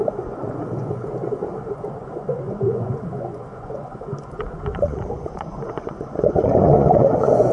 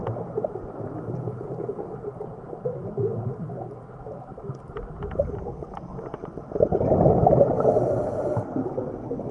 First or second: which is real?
second